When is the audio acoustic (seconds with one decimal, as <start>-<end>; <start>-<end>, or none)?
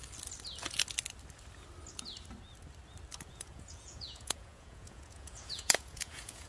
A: 0.0-3.3